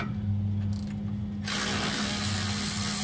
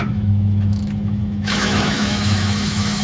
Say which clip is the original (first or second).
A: first